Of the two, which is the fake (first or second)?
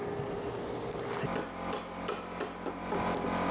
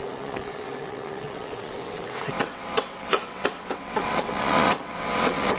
second